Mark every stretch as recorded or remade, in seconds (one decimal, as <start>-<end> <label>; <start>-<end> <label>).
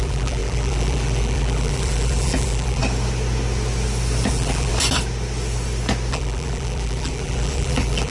0.0-2.8 remade; 2.8-4.3 recorded; 4.3-4.7 remade; 4.7-6.1 recorded; 6.1-8.1 remade